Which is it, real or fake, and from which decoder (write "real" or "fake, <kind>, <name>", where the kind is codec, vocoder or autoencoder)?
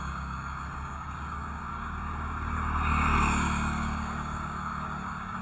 fake, codec, DAC